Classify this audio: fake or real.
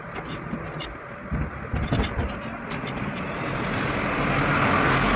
real